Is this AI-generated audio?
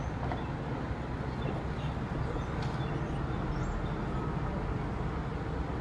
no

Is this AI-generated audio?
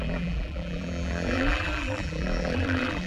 yes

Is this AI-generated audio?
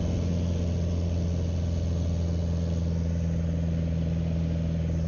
no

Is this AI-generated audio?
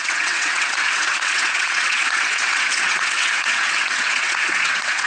yes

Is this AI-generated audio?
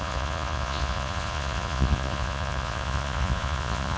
yes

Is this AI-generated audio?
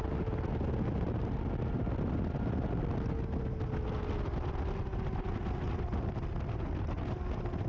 no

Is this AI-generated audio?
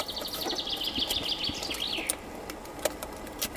no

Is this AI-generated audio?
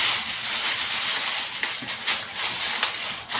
no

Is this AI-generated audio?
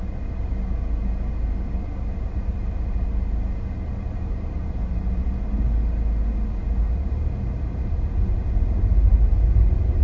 no